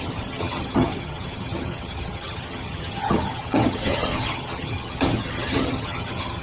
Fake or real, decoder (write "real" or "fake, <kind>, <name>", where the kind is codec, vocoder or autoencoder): fake, vocoder, HiFi-GAN